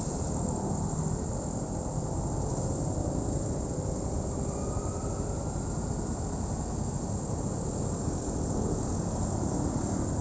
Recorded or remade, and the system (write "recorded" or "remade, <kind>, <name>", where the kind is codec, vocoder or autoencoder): recorded